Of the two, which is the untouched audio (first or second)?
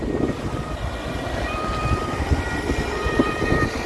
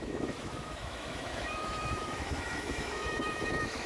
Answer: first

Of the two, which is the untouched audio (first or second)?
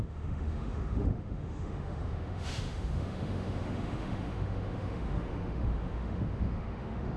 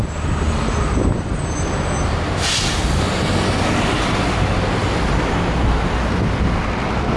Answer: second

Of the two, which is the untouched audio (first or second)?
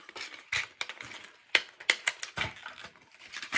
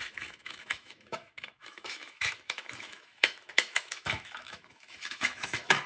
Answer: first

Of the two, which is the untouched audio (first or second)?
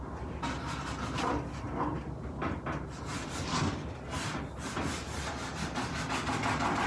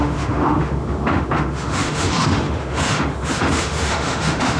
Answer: first